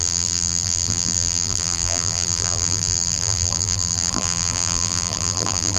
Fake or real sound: fake